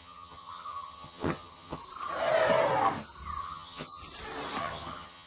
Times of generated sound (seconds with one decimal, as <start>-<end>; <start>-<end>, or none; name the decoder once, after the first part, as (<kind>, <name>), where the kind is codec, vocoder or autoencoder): 0.0-1.8 (vocoder, HiFi-GAN); 3.4-4.0; 4.6-5.3

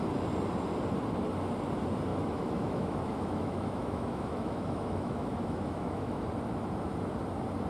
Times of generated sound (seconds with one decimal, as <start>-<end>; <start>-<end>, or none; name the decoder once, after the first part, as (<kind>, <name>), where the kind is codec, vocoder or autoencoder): 2.1-6.2 (autoencoder, DAC-VAE)